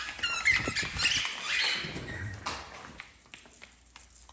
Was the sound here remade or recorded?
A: recorded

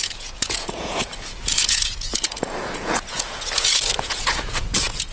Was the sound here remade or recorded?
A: remade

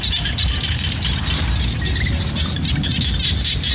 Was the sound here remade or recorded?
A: recorded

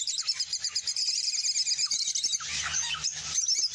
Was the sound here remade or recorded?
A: recorded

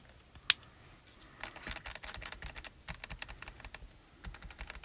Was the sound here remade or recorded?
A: recorded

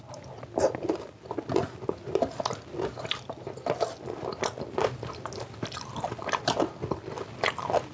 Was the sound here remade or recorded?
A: recorded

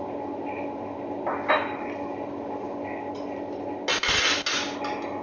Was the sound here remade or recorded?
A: recorded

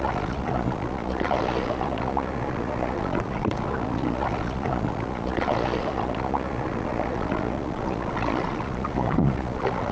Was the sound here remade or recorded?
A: remade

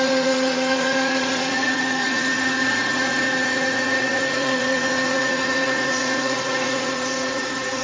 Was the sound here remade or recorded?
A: remade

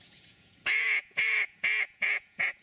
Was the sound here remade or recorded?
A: remade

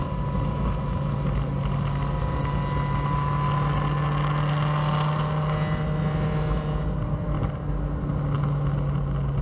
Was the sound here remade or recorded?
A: recorded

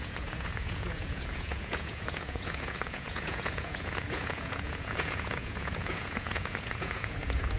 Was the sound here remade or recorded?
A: remade